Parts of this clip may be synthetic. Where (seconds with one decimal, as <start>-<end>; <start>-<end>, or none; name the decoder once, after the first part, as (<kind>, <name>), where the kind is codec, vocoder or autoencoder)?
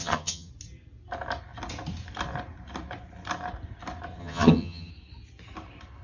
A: 0.0-0.5 (vocoder, HiFi-GAN); 4.2-4.9